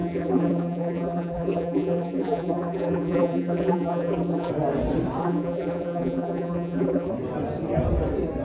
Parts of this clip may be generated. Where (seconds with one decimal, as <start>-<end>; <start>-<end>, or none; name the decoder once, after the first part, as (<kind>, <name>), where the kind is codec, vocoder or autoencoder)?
0.0-4.5 (vocoder, BigVGAN v2); 5.2-7.1